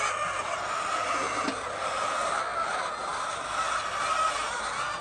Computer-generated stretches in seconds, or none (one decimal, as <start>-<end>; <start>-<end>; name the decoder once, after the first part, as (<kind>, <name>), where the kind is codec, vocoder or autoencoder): none